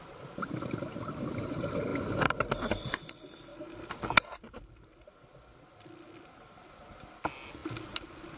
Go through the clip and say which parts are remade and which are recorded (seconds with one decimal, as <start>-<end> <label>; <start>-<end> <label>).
0.0-8.4 recorded